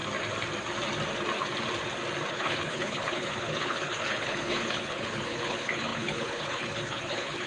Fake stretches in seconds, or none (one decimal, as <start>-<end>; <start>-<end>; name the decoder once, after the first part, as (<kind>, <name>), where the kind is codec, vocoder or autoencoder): 2.3-7.5 (codec, HILCodec)